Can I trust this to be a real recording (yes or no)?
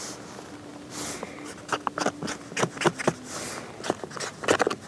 yes